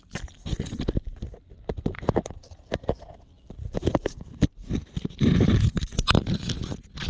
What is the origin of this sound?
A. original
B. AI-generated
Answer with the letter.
A